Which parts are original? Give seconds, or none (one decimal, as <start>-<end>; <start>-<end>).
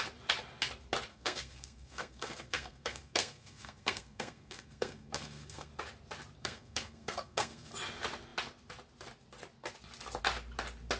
0.0-1.1; 5.7-6.4; 7.7-11.0